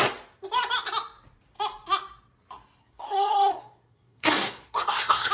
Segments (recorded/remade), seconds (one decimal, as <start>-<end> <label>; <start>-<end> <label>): 0.0-2.8 recorded; 2.8-5.3 remade